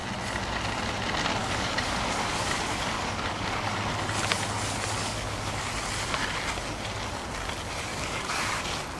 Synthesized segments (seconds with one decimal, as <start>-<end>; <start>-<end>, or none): 1.4-3.7; 5.0-5.7; 7.9-8.6